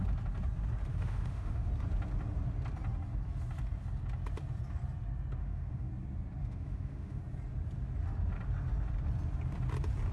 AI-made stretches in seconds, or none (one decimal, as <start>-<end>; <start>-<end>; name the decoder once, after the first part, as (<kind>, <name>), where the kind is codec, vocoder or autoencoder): 0.9-1.7 (autoencoder, DAC-VAE); 5.4-5.9; 6.4-7.2